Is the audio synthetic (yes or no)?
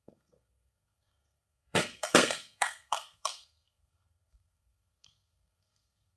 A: yes